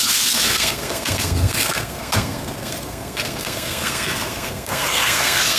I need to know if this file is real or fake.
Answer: fake